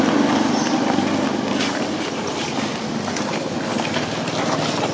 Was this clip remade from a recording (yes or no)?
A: no